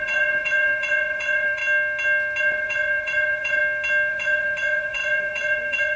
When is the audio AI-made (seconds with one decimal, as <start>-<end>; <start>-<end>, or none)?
0.0-1.6; 2.4-3.6; 4.1-6.0